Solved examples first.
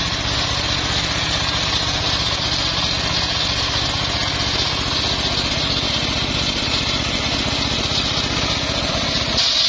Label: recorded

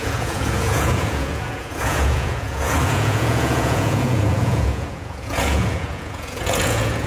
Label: remade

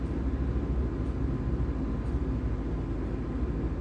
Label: recorded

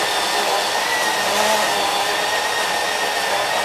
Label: recorded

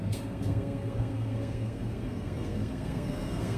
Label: remade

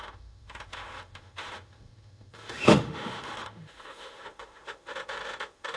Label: remade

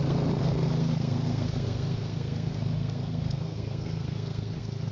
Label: remade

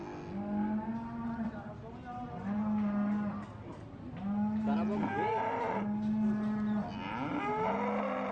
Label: recorded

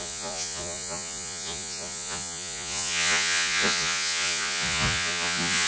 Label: remade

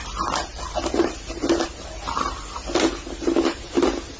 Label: recorded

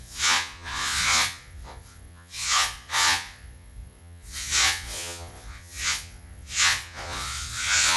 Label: remade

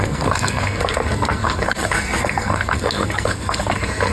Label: remade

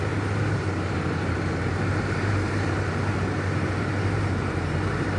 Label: remade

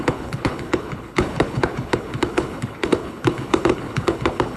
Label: remade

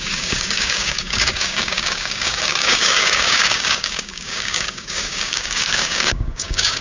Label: remade